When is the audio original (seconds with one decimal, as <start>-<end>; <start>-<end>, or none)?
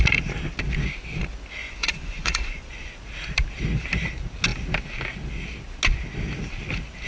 0.0-1.6; 3.0-7.1